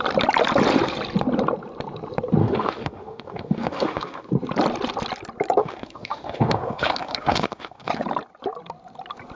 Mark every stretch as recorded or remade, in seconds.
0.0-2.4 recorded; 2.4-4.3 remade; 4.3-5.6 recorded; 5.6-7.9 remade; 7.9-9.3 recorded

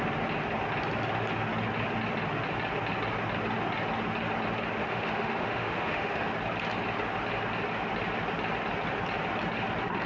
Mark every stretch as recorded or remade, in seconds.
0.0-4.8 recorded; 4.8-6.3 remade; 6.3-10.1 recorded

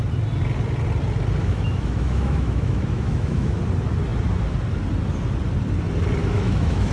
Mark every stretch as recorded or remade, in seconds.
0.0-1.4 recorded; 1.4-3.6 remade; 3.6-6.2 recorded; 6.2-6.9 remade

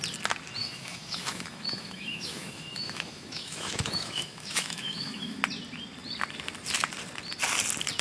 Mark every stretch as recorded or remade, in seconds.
0.0-0.6 recorded; 0.6-5.4 remade; 5.4-8.0 recorded

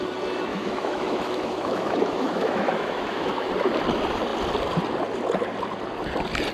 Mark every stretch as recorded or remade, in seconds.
0.0-0.5 recorded; 0.5-3.5 remade; 3.5-6.5 recorded